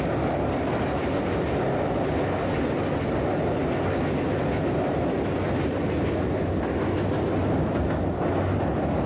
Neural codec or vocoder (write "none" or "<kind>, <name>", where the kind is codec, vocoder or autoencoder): none